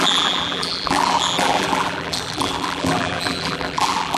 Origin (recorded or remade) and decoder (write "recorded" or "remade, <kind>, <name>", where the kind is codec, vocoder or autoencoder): remade, vocoder, BigVGAN v2